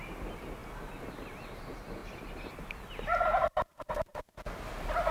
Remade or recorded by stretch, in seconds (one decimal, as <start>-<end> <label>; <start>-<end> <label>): 0.0-2.0 recorded; 2.0-2.8 remade; 2.8-5.1 recorded